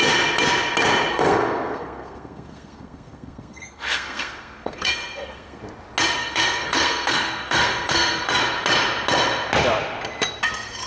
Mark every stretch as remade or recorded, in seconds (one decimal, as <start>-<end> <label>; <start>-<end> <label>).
0.0-1.1 recorded; 1.1-5.6 remade; 5.6-6.2 recorded; 6.2-8.4 remade; 8.4-10.9 recorded